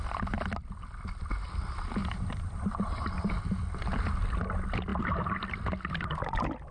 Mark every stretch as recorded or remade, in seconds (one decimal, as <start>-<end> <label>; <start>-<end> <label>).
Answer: 0.0-2.0 recorded; 2.0-3.3 remade; 3.3-6.7 recorded